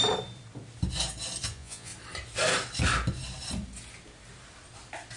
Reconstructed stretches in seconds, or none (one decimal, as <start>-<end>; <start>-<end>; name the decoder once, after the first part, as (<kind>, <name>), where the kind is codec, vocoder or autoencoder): 1.5-1.9 (vocoder, Vocos)

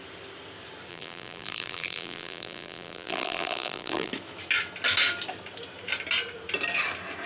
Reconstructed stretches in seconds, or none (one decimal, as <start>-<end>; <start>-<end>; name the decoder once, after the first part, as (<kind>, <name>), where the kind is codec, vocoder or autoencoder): 0.9-4.1 (vocoder, BigVGAN v2)

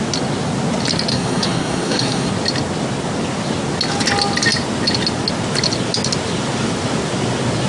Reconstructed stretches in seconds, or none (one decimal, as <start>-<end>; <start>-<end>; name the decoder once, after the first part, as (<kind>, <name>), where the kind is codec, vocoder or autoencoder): 1.1-2.3 (codec, SNAC)

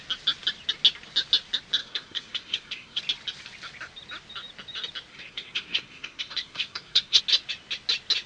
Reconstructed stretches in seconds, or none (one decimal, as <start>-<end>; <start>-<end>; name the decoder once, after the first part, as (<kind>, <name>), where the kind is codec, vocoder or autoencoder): 1.8-3.0 (codec, SNAC); 5.1-7.2

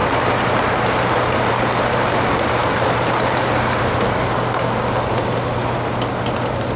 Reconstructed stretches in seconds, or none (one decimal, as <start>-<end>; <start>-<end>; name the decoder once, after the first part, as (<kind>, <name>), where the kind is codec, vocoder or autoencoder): none

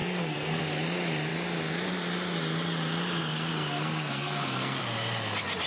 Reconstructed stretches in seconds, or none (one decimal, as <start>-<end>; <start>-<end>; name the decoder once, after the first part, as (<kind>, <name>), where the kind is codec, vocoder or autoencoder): 0.0-0.6 (codec, SNAC); 3.2-4.8

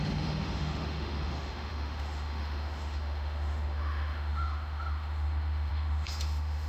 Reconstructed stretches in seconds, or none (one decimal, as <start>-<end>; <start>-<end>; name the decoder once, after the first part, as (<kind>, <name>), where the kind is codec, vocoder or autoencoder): 0.0-6.7 (autoencoder, DAC-VAE)

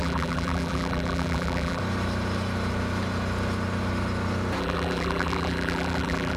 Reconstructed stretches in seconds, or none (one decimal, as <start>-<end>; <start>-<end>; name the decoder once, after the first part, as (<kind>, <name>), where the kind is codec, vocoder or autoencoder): 0.0-1.8 (vocoder, BigVGAN v2); 4.6-6.4